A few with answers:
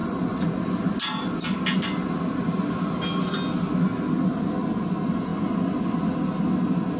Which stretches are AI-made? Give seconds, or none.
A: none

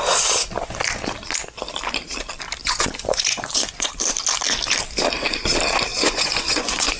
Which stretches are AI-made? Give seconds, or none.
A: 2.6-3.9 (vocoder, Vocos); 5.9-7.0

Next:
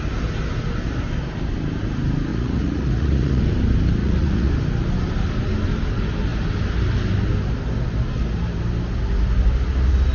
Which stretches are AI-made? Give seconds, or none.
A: 2.3-3.4 (vocoder, Vocos); 4.0-4.5

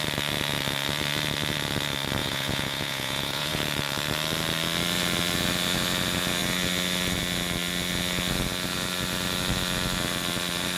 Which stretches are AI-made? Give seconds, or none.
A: 2.2-3.6 (vocoder, Vocos)

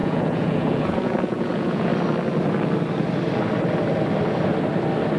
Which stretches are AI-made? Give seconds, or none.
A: 0.0-1.9 (vocoder, Vocos)